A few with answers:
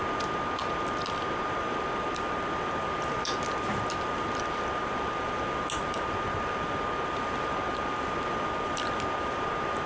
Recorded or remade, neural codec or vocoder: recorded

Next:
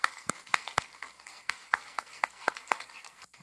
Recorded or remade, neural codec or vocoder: remade, codec, SNAC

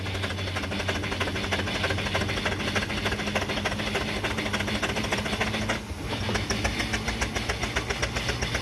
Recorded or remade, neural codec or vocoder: recorded